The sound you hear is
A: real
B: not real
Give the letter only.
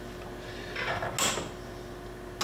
A